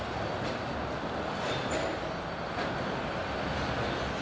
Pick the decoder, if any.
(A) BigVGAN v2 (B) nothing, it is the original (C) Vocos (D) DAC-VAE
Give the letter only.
B